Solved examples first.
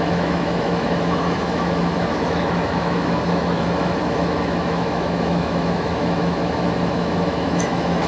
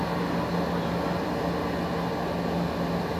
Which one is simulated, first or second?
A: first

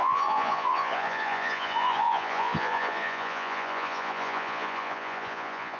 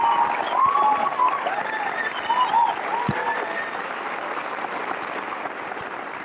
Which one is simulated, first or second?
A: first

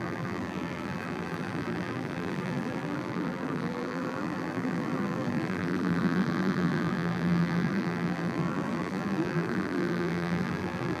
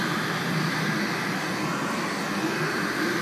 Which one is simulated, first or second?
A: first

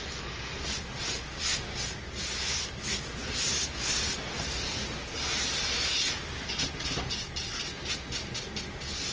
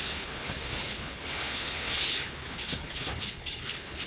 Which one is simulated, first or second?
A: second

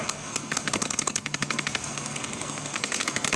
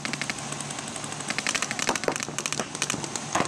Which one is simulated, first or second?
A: first